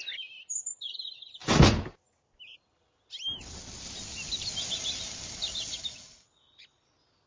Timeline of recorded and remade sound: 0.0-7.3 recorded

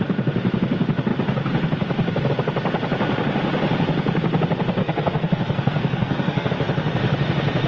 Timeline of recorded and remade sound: 0.0-4.8 recorded; 4.8-6.5 remade; 6.5-7.7 recorded

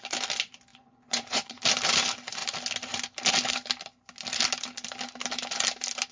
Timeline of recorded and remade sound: 0.0-0.7 recorded; 0.7-1.6 remade; 1.6-6.1 recorded